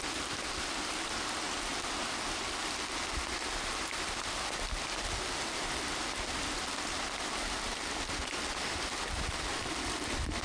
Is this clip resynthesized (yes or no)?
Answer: no